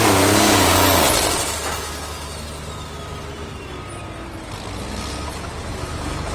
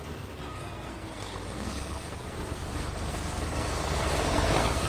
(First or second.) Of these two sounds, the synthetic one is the second